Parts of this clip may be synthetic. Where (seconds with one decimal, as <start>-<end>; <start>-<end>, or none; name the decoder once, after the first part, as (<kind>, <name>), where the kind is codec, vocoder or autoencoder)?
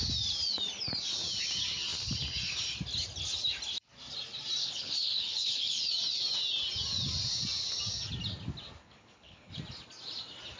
4.6-5.8 (codec, HILCodec); 8.8-9.6